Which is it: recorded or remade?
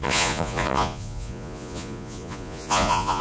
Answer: remade